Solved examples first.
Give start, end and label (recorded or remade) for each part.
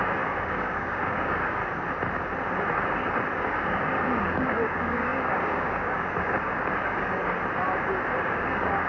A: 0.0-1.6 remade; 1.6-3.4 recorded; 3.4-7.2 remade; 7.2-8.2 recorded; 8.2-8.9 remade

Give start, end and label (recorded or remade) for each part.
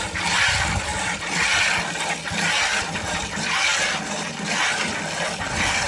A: 0.0-5.9 recorded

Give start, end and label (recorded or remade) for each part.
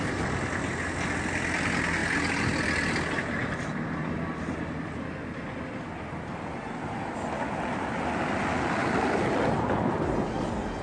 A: 0.0-10.8 recorded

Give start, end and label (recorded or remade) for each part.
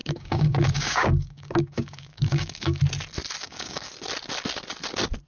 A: 0.0-2.8 remade; 2.8-3.4 recorded; 3.4-3.9 remade; 3.9-5.3 recorded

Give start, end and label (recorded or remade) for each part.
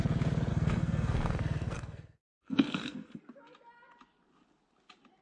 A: 0.0-0.5 recorded; 0.5-3.2 remade; 3.2-5.2 recorded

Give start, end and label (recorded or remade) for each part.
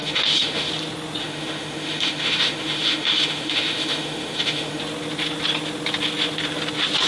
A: 0.0-0.7 remade; 0.7-1.2 recorded; 1.2-4.8 remade; 4.8-7.1 recorded